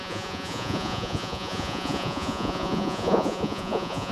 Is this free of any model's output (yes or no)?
no